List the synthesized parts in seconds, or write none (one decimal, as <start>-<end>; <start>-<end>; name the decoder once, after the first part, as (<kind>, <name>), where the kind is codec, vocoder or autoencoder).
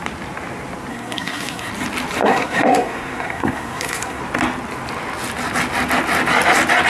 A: 0.9-1.7 (codec, SNAC); 2.2-4.2